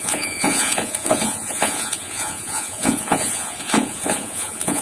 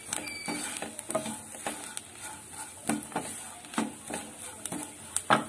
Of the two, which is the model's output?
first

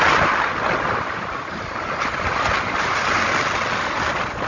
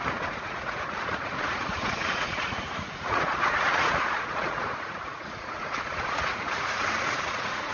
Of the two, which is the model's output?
second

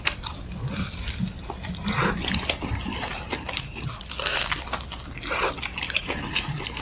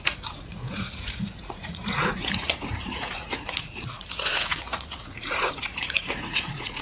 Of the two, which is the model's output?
second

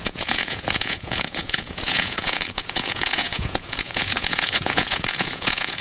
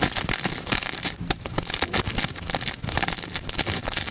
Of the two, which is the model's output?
first